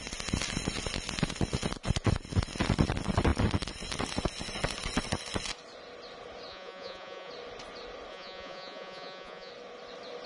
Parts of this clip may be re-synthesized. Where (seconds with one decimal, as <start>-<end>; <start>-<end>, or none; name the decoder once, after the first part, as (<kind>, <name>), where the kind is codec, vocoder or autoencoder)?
6.5-7.3 (vocoder, Vocos); 8.1-9.5